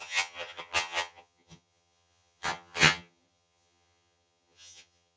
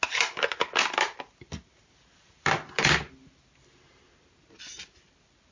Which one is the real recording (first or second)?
second